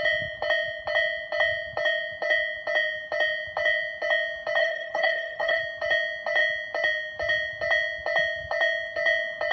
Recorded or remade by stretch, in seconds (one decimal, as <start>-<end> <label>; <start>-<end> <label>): 0.0-4.6 recorded; 4.6-5.6 remade; 5.6-9.5 recorded